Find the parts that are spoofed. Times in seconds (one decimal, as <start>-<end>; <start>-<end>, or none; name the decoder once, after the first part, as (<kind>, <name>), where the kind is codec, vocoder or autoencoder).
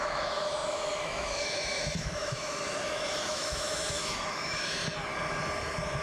0.0-4.8 (autoencoder, DAC-VAE)